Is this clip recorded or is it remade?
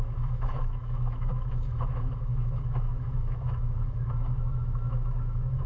remade